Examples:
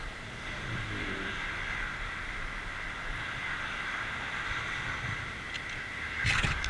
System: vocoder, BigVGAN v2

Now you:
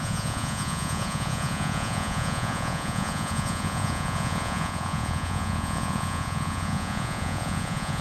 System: vocoder, Vocos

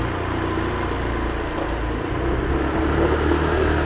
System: none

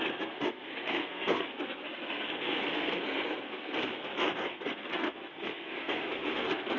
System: codec, SNAC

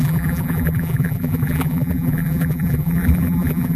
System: vocoder, BigVGAN v2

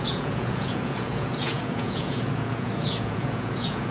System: vocoder, Vocos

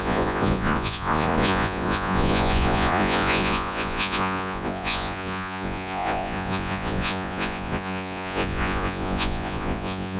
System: vocoder, Vocos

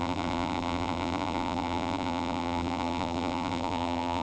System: vocoder, BigVGAN v2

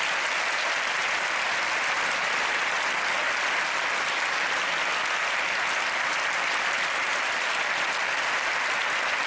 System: none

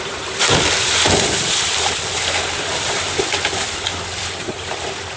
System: vocoder, BigVGAN v2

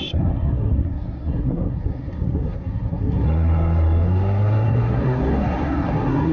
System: codec, SNAC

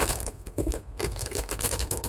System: codec, SNAC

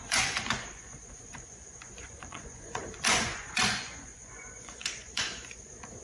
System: vocoder, Vocos